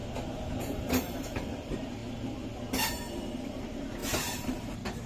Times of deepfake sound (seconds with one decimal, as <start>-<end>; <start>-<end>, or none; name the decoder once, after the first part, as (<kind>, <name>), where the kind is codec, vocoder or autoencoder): 0.6-2.0 (vocoder, BigVGAN v2); 3.1-5.1